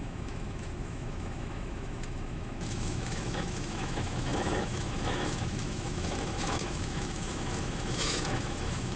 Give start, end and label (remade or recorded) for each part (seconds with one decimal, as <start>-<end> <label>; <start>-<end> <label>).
0.0-9.0 remade